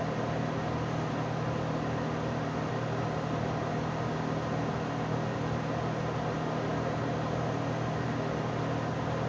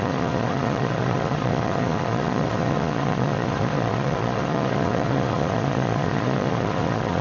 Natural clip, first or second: first